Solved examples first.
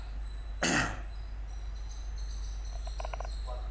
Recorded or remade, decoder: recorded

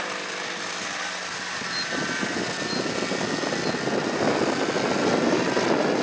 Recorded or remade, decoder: recorded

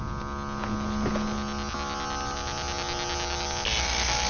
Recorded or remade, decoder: recorded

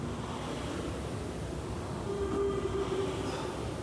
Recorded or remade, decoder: recorded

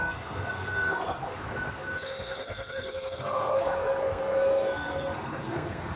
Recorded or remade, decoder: remade, codec, SNAC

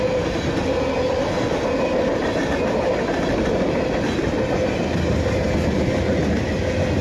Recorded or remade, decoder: recorded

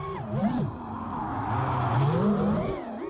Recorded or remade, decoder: recorded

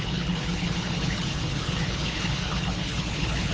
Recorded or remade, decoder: remade, codec, HILCodec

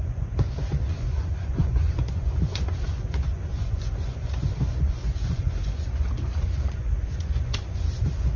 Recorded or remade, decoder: remade, vocoder, Vocos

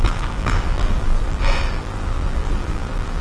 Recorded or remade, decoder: remade, vocoder, BigVGAN v2